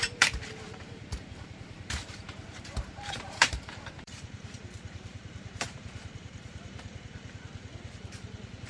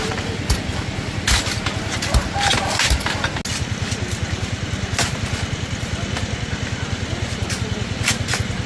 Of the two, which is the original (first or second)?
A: second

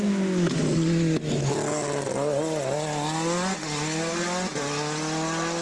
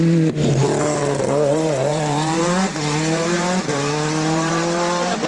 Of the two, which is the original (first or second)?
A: first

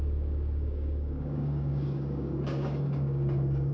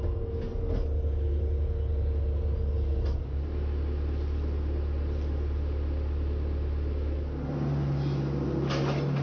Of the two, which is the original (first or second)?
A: second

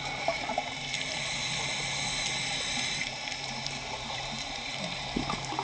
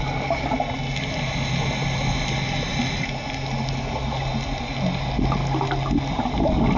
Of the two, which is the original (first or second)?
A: second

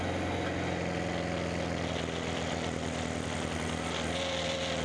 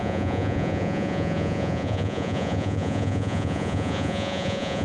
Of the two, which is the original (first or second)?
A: first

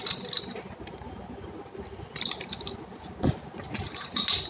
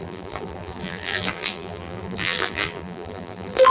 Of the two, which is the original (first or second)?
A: first